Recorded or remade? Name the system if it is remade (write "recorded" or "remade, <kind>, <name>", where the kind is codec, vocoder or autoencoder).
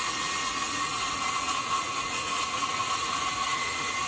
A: remade, vocoder, Vocos